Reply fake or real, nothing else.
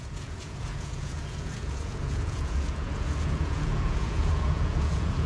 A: fake